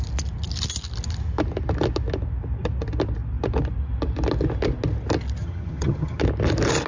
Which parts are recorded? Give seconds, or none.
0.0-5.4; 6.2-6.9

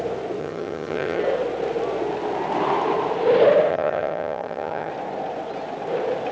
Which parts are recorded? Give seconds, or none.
0.0-0.4; 1.2-3.7; 4.9-6.3

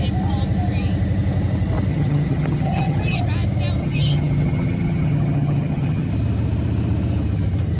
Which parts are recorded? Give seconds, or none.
0.0-1.9; 3.2-3.8; 6.1-7.8